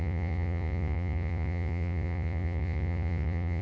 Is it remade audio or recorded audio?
remade